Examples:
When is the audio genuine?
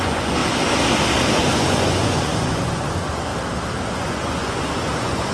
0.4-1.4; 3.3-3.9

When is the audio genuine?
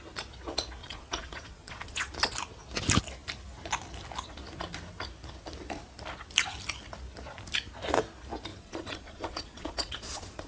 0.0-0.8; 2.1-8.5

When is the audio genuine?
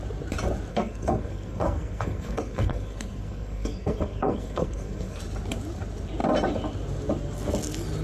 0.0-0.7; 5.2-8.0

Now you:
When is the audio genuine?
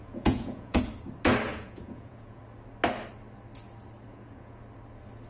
0.8-1.5; 2.4-4.1; 4.6-5.3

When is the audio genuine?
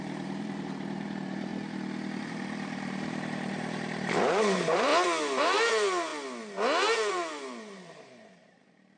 1.5-2.2; 4.9-5.4; 6.1-7.1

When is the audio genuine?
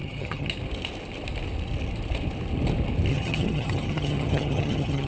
0.5-3.1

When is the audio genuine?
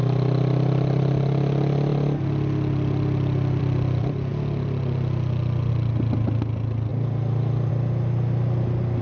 0.0-9.0